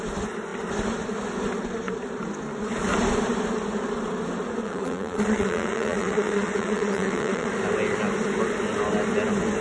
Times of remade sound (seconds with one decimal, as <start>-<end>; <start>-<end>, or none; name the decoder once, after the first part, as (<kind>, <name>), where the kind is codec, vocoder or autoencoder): 4.6-7.5 (vocoder, Vocos)